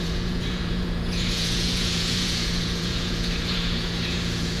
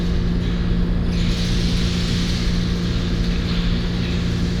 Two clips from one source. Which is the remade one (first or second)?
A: first